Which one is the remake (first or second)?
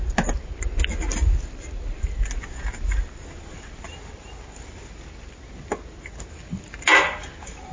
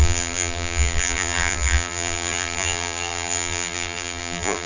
second